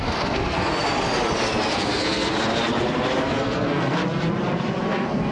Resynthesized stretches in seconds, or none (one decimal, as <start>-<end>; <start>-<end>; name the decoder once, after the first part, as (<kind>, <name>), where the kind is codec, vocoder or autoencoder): 0.0-0.7 (codec, SNAC); 1.7-2.3; 3.2-4.0; 4.8-5.3